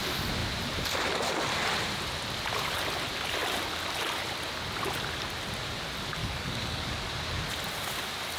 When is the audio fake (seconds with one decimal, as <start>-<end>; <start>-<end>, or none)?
6.2-7.1